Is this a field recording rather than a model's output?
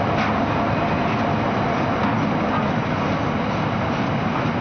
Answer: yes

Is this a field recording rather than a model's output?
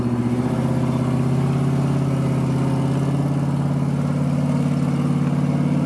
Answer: yes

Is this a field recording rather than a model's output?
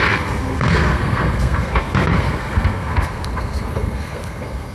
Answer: no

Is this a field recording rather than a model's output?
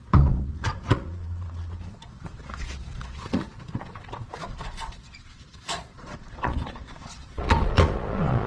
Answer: no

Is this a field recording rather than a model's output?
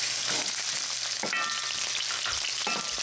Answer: yes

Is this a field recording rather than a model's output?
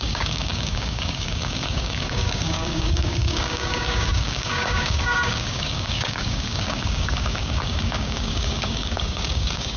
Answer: no